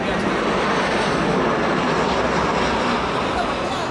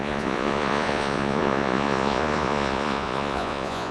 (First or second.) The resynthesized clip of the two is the second